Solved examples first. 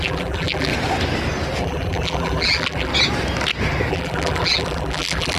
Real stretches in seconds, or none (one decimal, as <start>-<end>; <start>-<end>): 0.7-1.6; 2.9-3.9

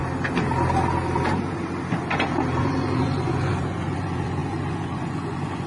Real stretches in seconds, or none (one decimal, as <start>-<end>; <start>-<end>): 0.0-2.6

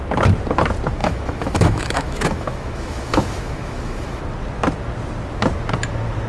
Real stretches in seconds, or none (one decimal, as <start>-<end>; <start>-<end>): 0.0-1.0; 4.2-6.3

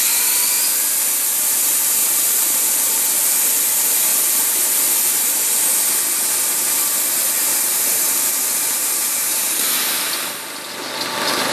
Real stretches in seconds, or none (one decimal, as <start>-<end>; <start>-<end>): 0.0-2.0; 2.6-7.5; 9.4-11.5